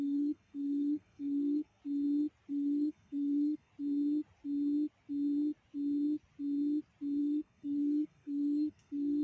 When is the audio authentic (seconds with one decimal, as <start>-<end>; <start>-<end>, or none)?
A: 1.8-2.5; 3.7-7.2